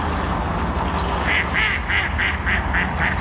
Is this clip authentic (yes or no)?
yes